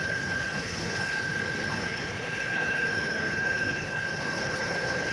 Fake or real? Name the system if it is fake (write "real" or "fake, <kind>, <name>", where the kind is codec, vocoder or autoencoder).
fake, codec, HILCodec